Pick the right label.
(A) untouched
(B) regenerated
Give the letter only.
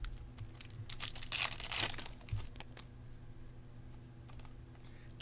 A